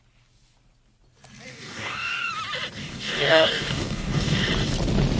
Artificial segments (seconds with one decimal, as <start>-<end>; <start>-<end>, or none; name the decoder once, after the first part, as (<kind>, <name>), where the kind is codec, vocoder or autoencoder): 1.5-2.3 (codec, DAC); 2.8-4.5